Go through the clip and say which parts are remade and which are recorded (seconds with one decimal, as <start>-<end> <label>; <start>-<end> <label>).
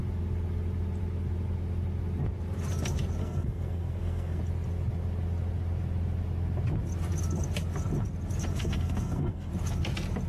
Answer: 0.0-3.2 recorded; 3.2-4.4 remade; 4.4-8.5 recorded; 8.5-9.5 remade; 9.5-10.3 recorded